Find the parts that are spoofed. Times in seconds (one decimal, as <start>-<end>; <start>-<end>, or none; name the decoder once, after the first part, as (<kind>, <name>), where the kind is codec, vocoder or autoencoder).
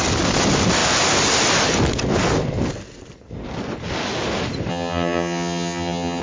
4.7-6.2 (vocoder, HiFi-GAN)